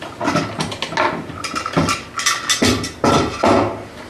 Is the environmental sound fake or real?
real